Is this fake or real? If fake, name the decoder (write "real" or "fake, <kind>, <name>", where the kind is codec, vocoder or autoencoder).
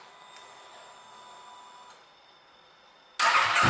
real